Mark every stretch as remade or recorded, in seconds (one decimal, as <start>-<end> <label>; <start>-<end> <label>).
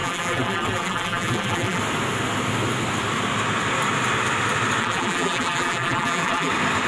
0.0-1.8 remade; 1.8-4.8 recorded; 4.8-6.5 remade; 6.5-6.9 recorded